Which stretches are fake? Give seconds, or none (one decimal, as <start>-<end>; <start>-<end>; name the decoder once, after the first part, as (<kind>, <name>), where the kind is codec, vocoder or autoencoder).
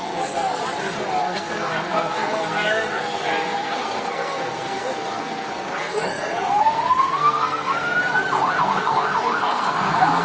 0.0-0.6 (codec, SNAC); 1.2-8.0; 8.5-10.2